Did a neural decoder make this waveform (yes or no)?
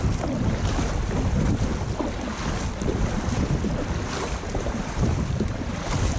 no